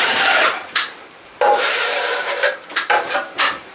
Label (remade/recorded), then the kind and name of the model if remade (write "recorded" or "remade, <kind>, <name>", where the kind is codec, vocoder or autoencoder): remade, vocoder, BigVGAN v2